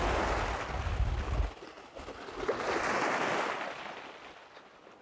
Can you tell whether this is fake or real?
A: real